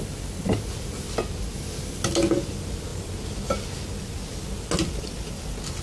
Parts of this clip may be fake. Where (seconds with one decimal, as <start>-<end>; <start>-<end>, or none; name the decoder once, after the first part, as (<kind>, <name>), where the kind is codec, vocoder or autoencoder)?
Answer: none